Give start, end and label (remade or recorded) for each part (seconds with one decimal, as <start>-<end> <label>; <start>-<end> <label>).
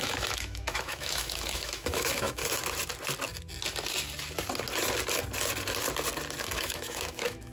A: 0.0-2.4 remade; 2.4-6.4 recorded; 6.4-7.5 remade